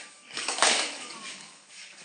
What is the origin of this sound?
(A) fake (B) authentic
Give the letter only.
A